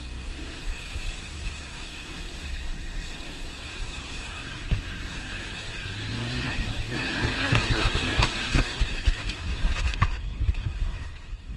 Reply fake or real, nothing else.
fake